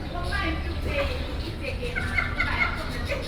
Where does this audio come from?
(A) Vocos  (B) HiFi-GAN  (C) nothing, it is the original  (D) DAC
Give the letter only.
C